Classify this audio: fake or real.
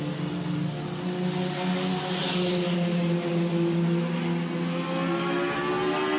real